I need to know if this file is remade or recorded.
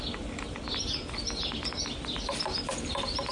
recorded